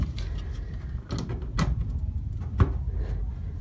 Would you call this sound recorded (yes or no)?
yes